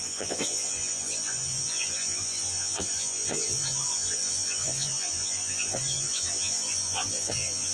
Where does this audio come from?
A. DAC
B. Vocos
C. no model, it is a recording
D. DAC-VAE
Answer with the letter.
B